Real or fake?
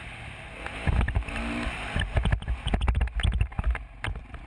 real